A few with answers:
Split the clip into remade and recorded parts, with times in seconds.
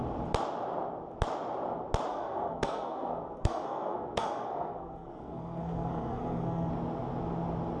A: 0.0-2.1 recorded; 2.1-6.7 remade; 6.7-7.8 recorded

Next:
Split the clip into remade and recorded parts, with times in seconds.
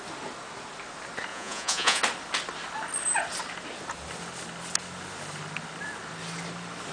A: 0.0-1.3 recorded; 1.3-2.0 remade; 2.0-6.9 recorded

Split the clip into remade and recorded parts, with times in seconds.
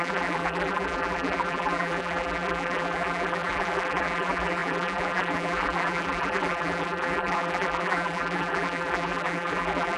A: 0.0-10.0 remade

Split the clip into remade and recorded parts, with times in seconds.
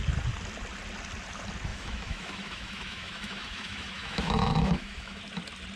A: 0.0-1.7 recorded; 1.7-5.2 remade; 5.2-5.8 recorded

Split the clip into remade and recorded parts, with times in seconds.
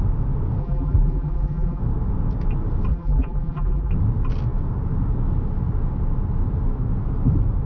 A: 0.0-0.6 recorded; 0.6-1.8 remade; 1.8-2.9 recorded; 2.9-3.9 remade; 3.9-7.7 recorded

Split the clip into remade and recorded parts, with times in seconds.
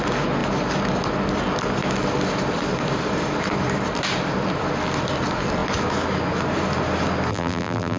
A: 0.0-7.3 recorded; 7.3-8.0 remade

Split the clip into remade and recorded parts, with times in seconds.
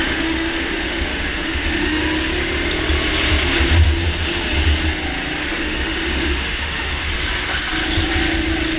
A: 0.0-2.0 remade; 2.0-5.4 recorded; 5.4-7.1 remade; 7.1-8.8 recorded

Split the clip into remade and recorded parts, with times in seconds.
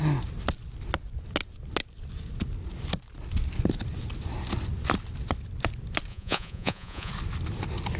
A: 0.0-6.1 recorded; 6.1-7.1 remade; 7.1-8.0 recorded